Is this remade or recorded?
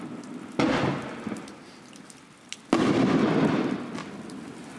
recorded